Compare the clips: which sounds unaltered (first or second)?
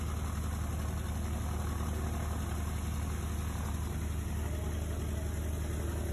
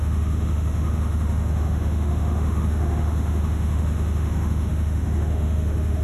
first